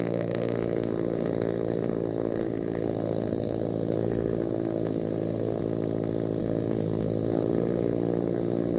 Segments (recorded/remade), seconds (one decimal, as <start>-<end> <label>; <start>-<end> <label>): 0.0-5.6 remade; 5.6-6.4 recorded; 6.4-8.8 remade